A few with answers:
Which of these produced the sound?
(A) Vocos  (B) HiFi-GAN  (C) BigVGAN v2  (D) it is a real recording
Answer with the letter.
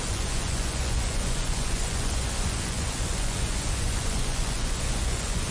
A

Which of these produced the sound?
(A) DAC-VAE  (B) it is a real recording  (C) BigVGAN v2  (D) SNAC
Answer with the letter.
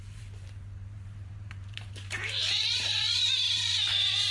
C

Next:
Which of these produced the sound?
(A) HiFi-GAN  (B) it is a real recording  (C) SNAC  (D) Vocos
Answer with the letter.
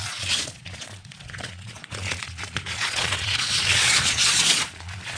D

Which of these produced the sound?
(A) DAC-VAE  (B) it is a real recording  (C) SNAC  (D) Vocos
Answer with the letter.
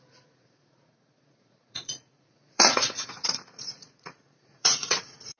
D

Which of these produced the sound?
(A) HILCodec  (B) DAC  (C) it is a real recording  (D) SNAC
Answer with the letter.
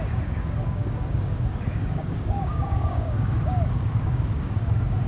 B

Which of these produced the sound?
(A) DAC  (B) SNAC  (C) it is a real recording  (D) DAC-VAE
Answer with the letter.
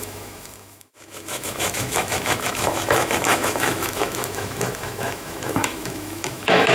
D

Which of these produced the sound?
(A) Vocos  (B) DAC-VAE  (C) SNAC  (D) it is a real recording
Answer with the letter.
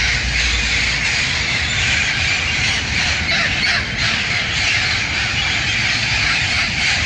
D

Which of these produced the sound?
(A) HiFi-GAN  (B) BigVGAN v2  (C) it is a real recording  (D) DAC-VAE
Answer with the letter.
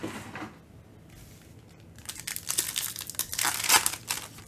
C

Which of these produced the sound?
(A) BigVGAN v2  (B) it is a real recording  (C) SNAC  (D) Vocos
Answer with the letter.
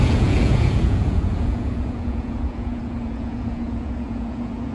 D